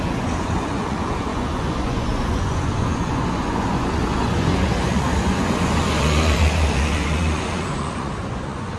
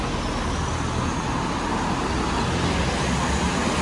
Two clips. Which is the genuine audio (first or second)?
second